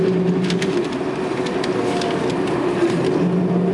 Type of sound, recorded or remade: recorded